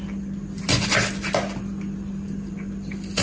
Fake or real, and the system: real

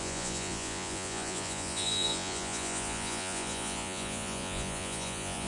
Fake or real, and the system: fake, vocoder, Vocos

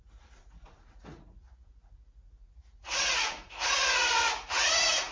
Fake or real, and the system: fake, vocoder, Vocos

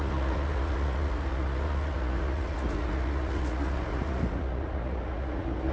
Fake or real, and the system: fake, vocoder, Vocos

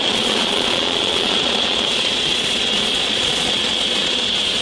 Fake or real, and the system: fake, vocoder, Vocos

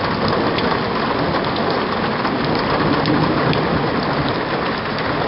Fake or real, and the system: real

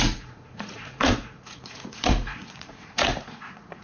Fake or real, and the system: fake, vocoder, Vocos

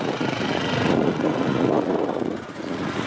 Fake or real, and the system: fake, vocoder, Vocos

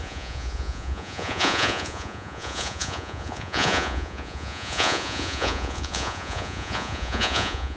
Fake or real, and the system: fake, vocoder, Vocos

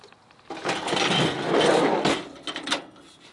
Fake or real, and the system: real